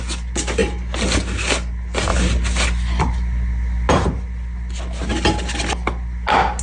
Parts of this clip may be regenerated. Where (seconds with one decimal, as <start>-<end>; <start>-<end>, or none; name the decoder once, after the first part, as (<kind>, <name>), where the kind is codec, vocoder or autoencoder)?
none